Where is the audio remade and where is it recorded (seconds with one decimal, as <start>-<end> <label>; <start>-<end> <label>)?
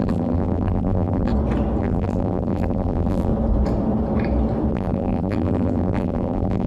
0.0-1.3 remade; 1.3-1.8 recorded; 1.8-3.3 remade; 3.3-4.7 recorded; 4.7-6.7 remade